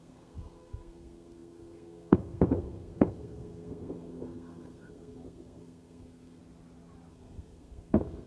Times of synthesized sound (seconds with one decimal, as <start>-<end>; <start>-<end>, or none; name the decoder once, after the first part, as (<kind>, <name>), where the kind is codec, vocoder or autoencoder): 0.0-6.4 (codec, SNAC); 7.1-8.3